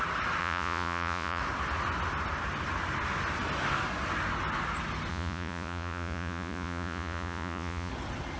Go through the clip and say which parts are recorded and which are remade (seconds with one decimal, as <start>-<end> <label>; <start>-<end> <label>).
0.0-0.4 recorded; 0.4-1.4 remade; 1.4-5.1 recorded; 5.1-7.9 remade; 7.9-8.4 recorded